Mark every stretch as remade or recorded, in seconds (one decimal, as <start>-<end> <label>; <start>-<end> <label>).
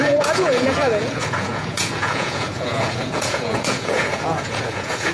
0.0-5.1 remade